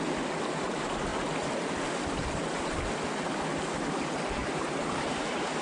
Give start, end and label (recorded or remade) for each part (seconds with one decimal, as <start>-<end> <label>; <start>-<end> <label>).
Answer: 0.0-4.4 recorded; 4.4-5.6 remade